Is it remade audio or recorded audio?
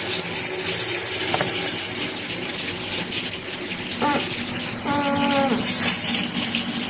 recorded